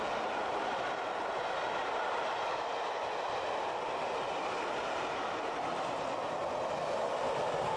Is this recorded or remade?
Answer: recorded